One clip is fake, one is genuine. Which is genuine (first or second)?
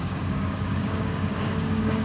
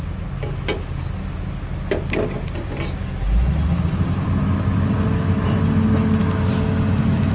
second